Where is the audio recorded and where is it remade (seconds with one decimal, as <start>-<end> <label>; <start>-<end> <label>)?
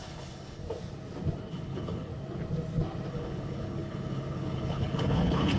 0.0-0.6 remade; 0.6-1.5 recorded; 1.5-2.1 remade; 2.1-3.1 recorded; 3.1-5.6 remade